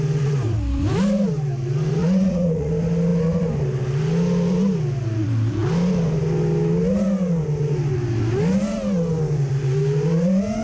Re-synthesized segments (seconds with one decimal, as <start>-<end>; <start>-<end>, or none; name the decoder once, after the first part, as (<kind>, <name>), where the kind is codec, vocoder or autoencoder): 2.0-2.7 (vocoder, Vocos)